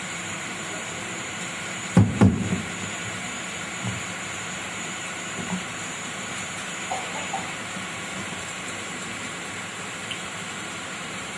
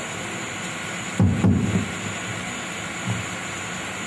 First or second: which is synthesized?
first